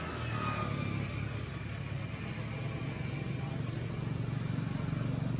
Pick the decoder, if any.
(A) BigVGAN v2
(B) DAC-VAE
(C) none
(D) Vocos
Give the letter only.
C